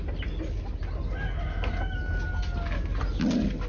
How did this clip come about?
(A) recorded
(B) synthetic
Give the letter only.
A